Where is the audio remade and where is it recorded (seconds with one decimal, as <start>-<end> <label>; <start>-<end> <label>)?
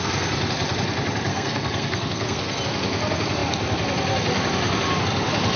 0.0-1.3 recorded; 1.3-2.6 remade; 2.6-5.6 recorded